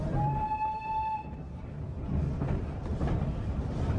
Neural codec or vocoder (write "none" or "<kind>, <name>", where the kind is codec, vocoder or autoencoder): none